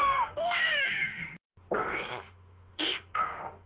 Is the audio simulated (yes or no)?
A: yes